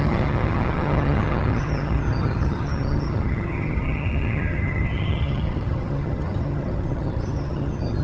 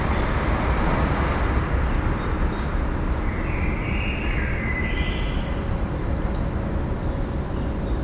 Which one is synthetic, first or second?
first